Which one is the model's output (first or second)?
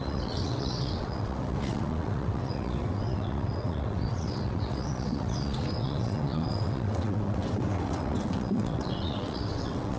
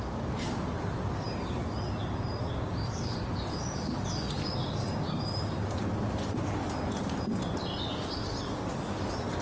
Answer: first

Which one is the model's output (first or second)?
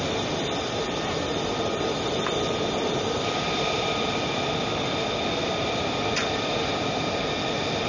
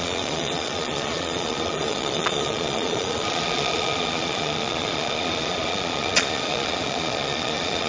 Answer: second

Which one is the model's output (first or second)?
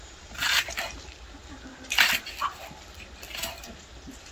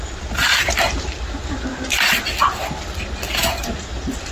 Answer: first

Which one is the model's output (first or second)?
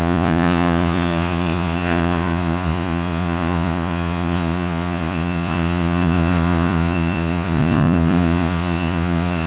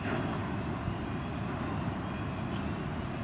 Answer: first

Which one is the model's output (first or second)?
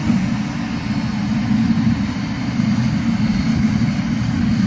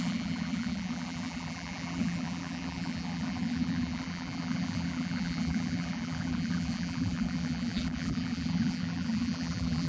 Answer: second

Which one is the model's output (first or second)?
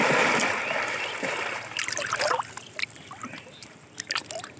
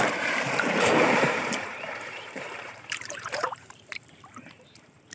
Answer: second